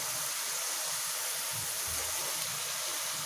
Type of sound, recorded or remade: remade